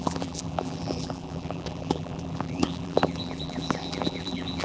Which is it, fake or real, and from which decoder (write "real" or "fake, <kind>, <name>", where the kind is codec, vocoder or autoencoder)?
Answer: fake, vocoder, BigVGAN v2